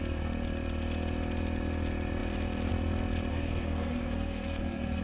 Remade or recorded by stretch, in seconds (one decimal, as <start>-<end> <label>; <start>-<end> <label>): 0.0-3.3 recorded; 3.3-5.0 remade